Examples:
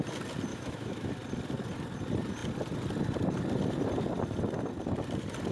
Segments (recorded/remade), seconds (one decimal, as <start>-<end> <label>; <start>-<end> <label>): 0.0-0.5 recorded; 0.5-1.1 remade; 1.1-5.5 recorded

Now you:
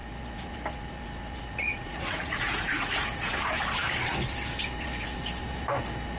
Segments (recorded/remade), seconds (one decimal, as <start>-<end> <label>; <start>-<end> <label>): 0.0-1.7 recorded; 1.7-3.3 remade; 3.3-6.2 recorded

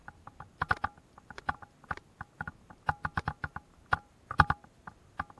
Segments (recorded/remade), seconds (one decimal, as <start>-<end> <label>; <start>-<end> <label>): 0.0-5.4 recorded